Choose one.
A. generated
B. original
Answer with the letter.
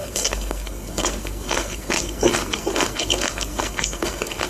A